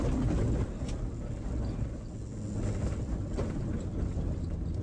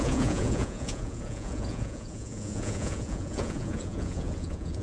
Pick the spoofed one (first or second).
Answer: second